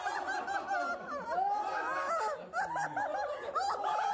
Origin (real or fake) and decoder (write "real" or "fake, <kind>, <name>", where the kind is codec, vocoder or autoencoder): real